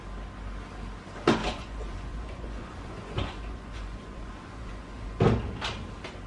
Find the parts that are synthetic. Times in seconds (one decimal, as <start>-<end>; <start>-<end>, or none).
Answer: 1.4-5.2